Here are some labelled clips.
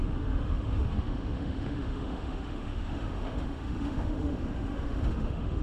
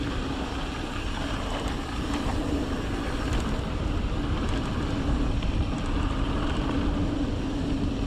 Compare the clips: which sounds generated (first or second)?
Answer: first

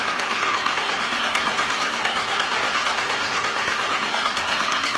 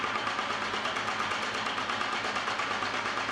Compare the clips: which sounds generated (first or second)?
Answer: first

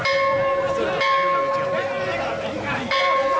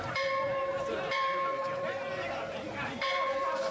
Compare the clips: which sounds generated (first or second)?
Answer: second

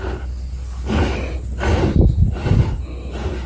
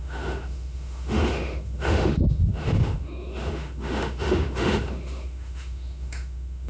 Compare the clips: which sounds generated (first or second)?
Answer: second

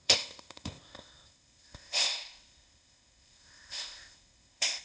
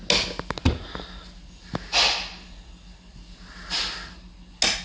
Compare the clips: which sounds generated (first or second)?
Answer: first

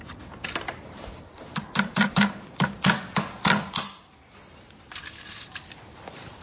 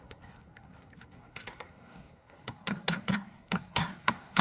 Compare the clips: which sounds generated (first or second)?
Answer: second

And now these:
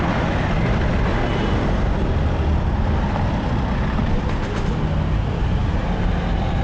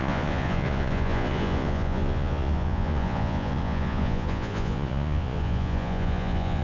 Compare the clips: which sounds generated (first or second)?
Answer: second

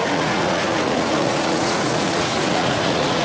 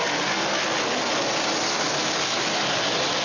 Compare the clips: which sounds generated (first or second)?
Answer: first